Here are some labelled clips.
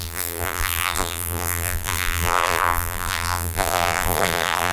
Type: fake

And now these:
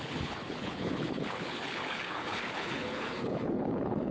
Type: fake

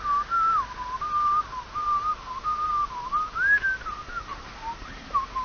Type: real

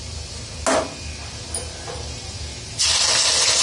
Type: real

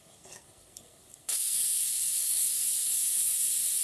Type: fake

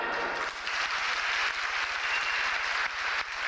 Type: real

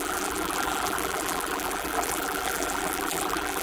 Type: fake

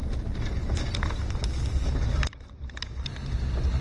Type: real